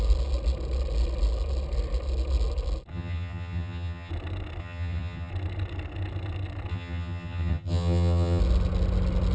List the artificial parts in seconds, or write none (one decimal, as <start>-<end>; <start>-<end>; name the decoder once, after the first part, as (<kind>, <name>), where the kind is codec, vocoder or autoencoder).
2.9-4.1 (vocoder, HiFi-GAN); 4.6-5.3; 6.7-8.4